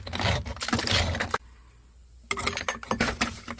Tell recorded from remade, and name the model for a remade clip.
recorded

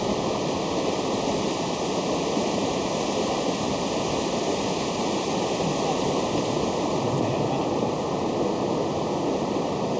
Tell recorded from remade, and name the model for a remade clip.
recorded